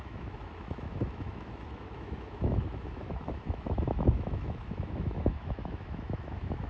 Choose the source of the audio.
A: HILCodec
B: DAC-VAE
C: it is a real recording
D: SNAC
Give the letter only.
B